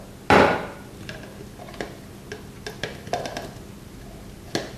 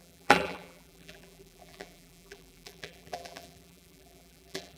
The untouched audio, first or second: first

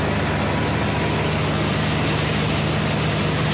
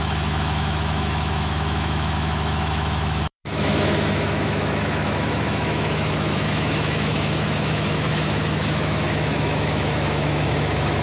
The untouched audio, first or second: first